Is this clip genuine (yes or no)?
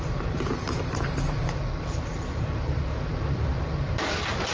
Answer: no